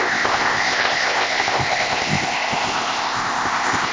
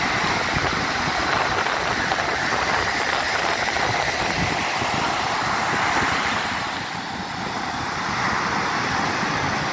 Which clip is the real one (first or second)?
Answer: second